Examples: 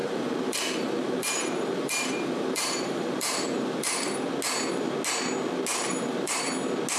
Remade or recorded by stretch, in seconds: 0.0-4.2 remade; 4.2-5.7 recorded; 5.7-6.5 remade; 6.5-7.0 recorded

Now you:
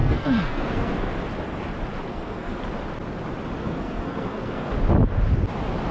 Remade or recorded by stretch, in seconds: 0.0-1.1 remade; 1.1-2.1 recorded; 2.1-2.6 remade; 2.6-3.6 recorded; 3.6-4.7 remade; 4.7-5.9 recorded

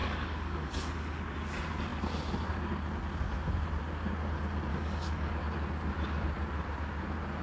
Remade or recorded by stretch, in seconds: 0.0-1.2 remade; 1.2-4.7 recorded; 4.7-5.3 remade; 5.3-7.4 recorded

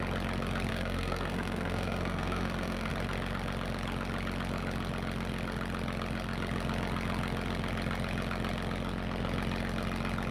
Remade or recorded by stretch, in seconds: 0.0-0.7 recorded; 0.7-2.9 remade; 2.9-10.3 recorded

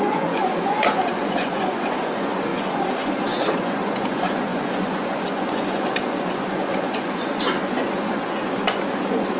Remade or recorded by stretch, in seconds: 0.0-9.4 remade

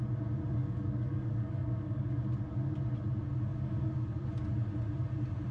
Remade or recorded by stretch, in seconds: 0.0-0.6 recorded; 0.6-2.1 remade; 2.1-3.5 recorded; 3.5-4.3 remade; 4.3-5.5 recorded

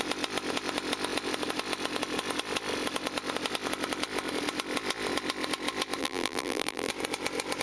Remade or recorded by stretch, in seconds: 0.0-6.0 recorded; 6.0-6.9 remade; 6.9-7.6 recorded